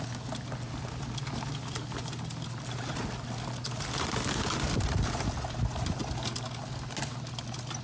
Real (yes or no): yes